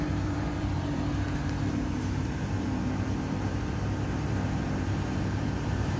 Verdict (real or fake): fake